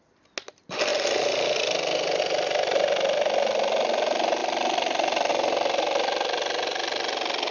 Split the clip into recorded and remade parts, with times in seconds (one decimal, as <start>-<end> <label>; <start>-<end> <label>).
0.0-7.5 recorded